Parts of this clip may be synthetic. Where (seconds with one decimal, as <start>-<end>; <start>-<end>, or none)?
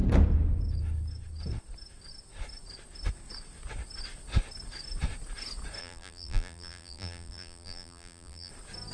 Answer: 5.8-8.5